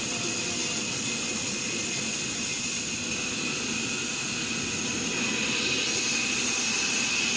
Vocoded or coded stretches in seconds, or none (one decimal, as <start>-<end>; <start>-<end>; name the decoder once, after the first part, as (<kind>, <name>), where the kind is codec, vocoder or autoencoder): none